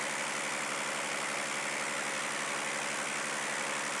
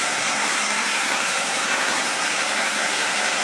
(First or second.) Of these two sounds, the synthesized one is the second